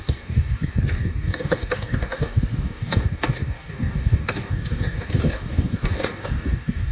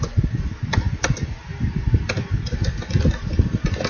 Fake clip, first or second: first